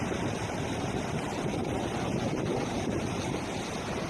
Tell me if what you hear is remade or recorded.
recorded